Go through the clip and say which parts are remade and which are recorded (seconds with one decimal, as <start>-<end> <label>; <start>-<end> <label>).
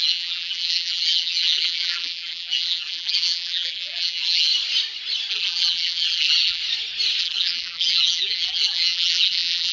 0.0-4.5 remade; 4.5-5.3 recorded; 5.3-6.6 remade; 6.6-7.2 recorded; 7.2-9.7 remade